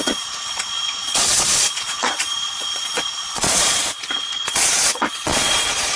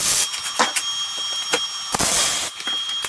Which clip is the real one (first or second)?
second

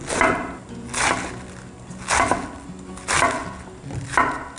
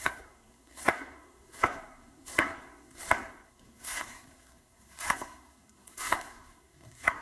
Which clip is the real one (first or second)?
first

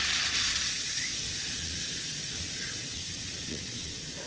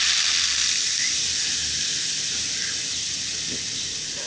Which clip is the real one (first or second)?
second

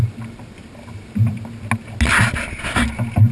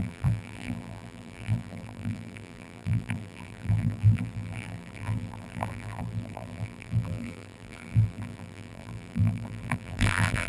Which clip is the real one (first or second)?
first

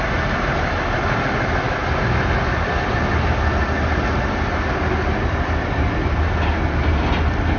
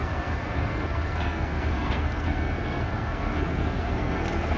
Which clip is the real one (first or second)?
first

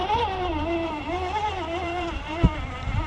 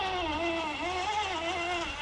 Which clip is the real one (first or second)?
second